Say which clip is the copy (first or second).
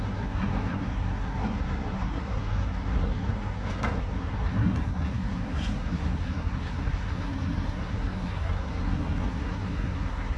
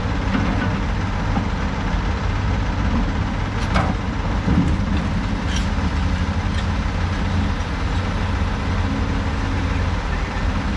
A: first